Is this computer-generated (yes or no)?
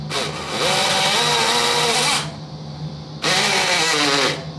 no